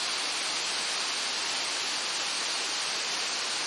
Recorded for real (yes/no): yes